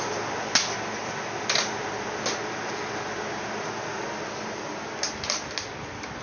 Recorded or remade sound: recorded